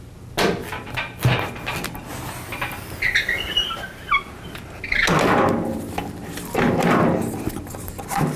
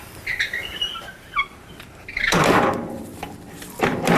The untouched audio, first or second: first